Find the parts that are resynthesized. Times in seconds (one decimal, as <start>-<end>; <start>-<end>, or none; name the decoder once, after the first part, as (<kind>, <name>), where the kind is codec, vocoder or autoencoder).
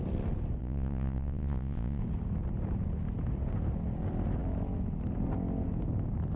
0.6-2.0 (vocoder, Vocos)